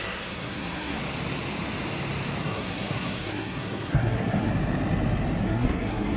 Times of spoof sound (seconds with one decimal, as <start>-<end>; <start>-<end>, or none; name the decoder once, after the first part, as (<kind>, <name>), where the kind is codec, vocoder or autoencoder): 0.0-1.0 (codec, SNAC); 2.4-4.5; 5.4-6.2